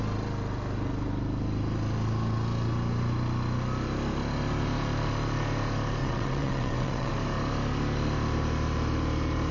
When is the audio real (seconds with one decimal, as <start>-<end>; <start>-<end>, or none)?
0.0-6.0; 7.1-9.5